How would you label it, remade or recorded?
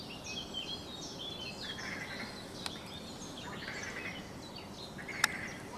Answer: recorded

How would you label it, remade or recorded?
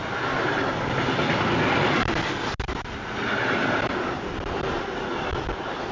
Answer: recorded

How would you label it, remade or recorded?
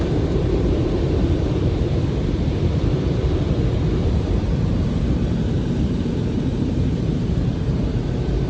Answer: remade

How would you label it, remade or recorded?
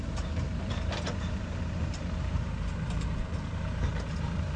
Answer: remade